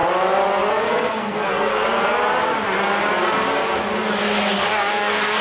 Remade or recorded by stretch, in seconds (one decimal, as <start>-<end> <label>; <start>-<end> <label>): 0.0-0.7 recorded; 0.7-1.7 remade; 1.7-4.9 recorded; 4.9-5.4 remade